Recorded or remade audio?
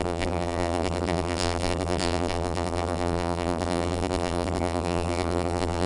remade